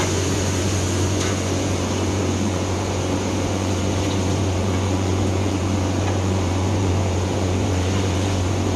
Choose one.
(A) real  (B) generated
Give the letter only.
B